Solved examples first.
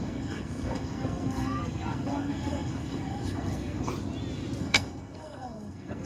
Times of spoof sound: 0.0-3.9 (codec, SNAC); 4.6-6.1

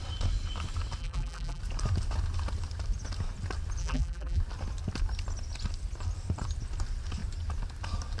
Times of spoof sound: 1.0-1.6 (vocoder, BigVGAN v2); 3.8-4.4

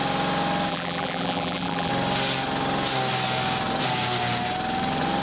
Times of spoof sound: 0.7-1.9 (vocoder, BigVGAN v2)

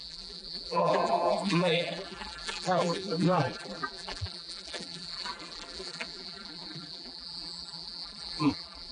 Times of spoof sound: 0.0-8.9 (vocoder, BigVGAN v2)

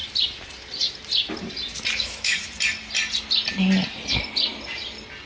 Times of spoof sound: 1.9-2.5 (autoencoder, DAC-VAE)